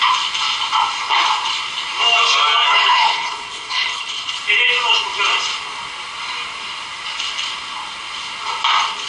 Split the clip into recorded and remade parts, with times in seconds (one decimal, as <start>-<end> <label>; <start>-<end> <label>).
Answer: 0.0-2.7 recorded; 2.7-4.4 remade; 4.4-9.1 recorded

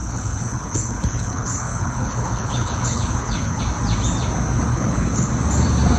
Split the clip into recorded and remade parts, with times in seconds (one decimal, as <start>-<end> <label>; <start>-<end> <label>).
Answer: 0.0-3.6 remade; 3.6-4.7 recorded; 4.7-5.3 remade; 5.3-6.0 recorded

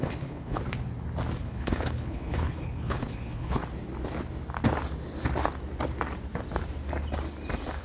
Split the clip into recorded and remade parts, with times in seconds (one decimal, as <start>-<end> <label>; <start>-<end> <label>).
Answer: 0.0-0.6 remade; 0.6-1.4 recorded; 1.4-3.6 remade; 3.6-7.8 recorded